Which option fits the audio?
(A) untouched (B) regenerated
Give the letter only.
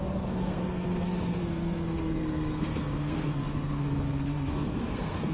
B